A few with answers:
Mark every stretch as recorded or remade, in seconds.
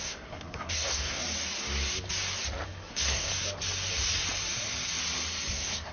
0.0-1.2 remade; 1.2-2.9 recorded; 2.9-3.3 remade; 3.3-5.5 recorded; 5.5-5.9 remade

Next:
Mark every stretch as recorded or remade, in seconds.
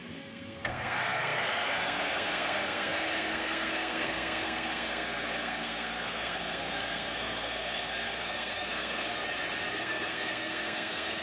0.0-9.1 remade; 9.1-9.7 recorded; 9.7-11.2 remade